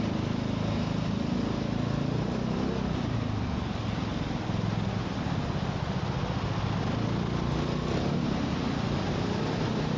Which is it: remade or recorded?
recorded